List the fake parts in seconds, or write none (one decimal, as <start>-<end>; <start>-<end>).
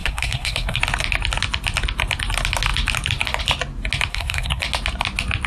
0.0-0.8; 4.1-4.6